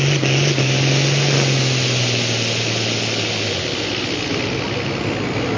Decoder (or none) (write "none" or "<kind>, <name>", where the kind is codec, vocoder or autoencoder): none